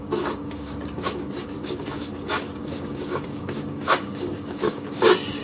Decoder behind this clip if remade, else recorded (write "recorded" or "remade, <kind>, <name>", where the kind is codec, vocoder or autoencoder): remade, codec, DAC